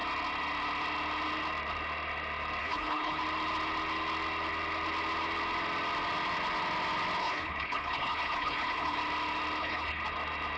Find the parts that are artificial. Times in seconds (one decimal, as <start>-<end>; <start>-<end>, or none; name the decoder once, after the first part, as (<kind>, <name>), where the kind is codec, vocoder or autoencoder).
2.6-3.2 (codec, HILCodec); 7.2-9.0; 9.6-10.0